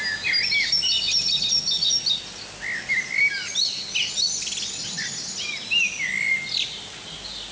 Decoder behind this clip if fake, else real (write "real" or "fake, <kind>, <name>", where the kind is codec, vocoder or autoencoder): real